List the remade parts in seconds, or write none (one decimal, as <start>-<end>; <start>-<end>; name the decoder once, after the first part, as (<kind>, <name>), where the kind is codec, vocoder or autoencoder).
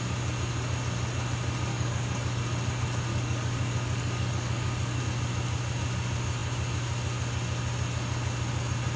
1.7-2.4 (codec, DAC); 3.1-5.0